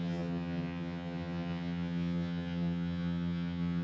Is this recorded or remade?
remade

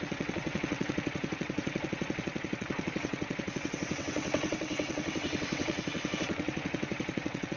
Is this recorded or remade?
remade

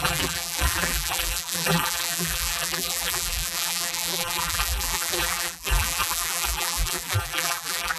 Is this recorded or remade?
remade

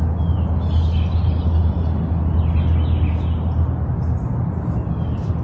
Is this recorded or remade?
recorded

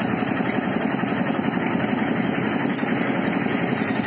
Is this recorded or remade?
recorded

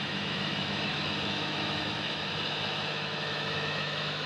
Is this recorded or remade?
remade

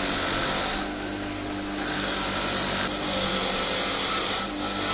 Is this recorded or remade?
recorded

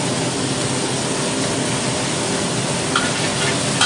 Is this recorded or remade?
recorded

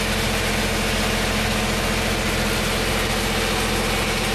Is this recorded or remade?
recorded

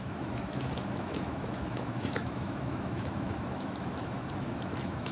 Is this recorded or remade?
remade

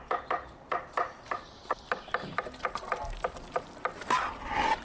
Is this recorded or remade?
recorded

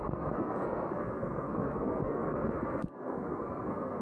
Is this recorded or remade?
remade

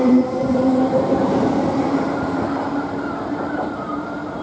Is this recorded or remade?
remade